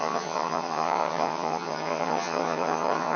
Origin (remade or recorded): remade